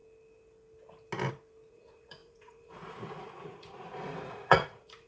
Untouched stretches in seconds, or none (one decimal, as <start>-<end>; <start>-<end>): 0.0-1.7